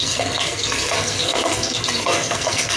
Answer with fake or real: fake